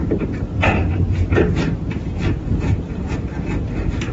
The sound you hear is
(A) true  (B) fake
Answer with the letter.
A